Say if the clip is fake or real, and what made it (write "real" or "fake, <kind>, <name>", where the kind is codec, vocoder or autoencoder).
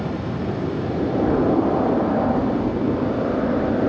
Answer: real